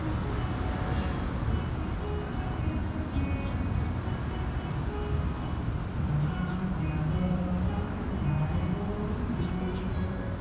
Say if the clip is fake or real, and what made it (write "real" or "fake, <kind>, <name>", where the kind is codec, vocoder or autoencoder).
real